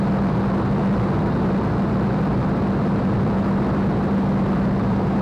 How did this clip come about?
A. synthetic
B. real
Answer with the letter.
B